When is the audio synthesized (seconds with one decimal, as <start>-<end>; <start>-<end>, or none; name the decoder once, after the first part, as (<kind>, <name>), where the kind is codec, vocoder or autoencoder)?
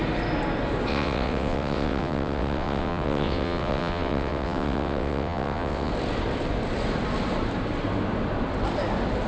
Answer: 0.9-5.9 (vocoder, WaveNeXt)